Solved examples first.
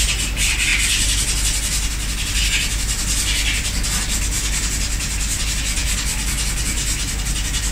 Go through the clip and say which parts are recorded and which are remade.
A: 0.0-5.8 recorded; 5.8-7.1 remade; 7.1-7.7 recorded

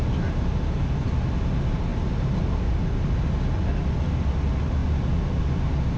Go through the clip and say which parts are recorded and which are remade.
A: 0.0-1.9 recorded; 1.9-2.7 remade; 2.7-6.0 recorded